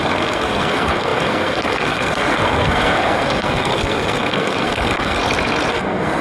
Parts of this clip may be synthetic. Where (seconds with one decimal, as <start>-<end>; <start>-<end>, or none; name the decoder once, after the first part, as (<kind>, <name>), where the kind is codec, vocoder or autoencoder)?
0.0-5.2 (codec, SNAC); 5.7-6.2